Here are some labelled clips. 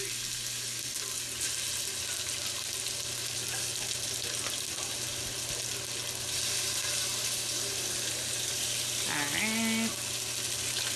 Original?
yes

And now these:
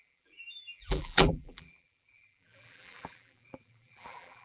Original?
no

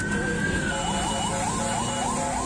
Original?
yes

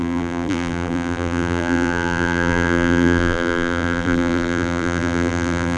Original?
no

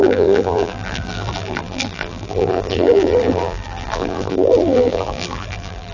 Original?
no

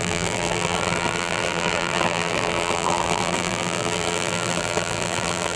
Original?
no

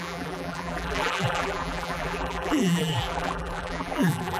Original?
no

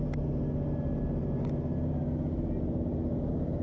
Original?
yes